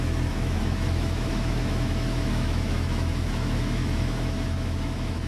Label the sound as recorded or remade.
remade